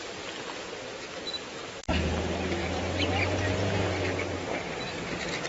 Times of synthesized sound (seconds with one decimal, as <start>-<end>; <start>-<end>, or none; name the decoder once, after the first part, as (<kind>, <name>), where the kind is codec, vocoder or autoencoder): 2.6-3.9 (vocoder, BigVGAN v2)